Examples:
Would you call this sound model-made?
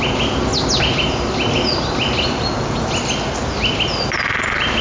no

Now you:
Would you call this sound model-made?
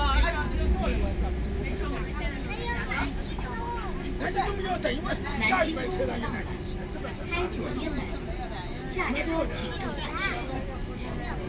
no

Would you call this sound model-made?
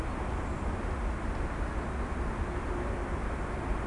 no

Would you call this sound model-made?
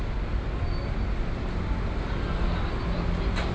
no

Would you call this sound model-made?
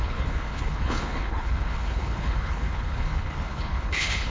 yes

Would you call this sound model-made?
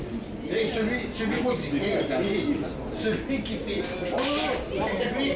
no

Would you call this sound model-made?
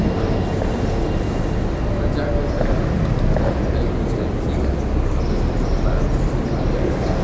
no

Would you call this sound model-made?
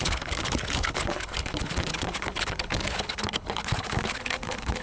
yes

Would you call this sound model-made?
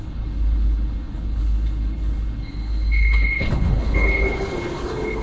yes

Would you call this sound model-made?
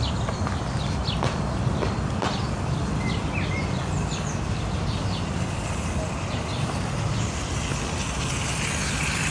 no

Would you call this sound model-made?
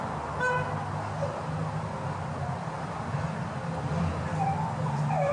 no